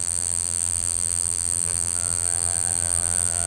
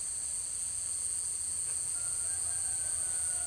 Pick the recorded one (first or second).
second